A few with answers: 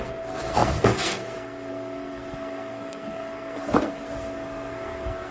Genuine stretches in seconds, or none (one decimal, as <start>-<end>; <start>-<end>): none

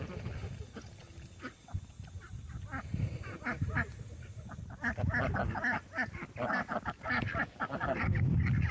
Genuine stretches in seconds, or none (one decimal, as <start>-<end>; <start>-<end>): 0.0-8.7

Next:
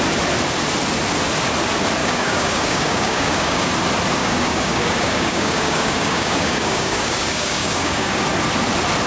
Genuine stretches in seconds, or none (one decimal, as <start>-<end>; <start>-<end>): 0.0-2.0; 3.7-4.2; 8.2-9.1

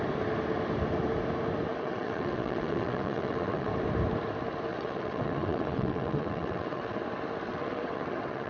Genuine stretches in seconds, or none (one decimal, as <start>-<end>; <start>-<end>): 0.0-1.7; 3.7-4.7; 7.0-7.5

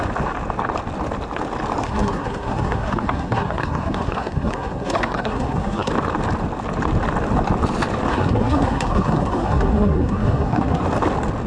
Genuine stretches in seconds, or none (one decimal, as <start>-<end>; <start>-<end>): 0.0-1.8; 5.9-8.1; 10.8-11.5